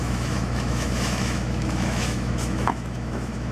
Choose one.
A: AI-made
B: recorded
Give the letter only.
A